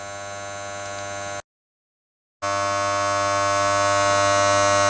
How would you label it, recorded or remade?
recorded